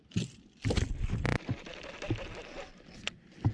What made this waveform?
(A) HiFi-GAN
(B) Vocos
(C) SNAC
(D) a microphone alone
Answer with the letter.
D